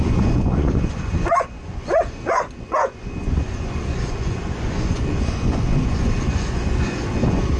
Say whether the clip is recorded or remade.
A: remade